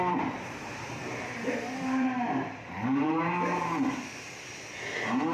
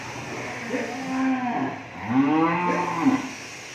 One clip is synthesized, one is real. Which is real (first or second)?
second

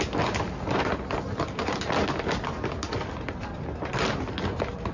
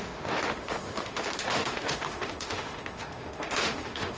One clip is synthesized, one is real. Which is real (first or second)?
first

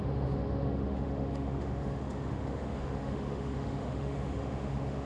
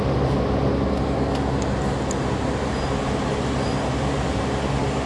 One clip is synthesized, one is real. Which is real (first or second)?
second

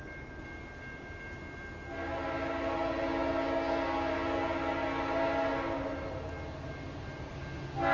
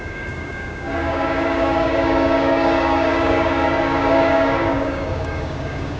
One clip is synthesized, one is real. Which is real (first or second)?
first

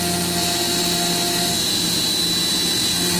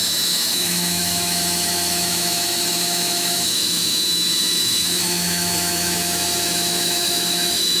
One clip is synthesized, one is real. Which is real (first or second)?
first